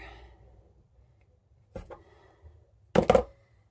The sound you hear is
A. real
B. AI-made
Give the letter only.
A